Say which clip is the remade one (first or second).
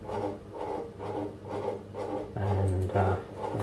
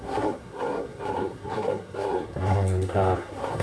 second